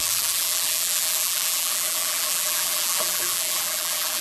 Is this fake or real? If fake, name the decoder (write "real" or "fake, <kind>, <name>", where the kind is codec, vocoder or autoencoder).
fake, vocoder, BigVGAN v2